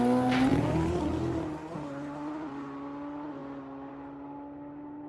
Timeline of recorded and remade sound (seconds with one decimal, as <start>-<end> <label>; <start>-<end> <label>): 0.0-0.5 recorded; 0.5-1.1 remade; 1.1-5.1 recorded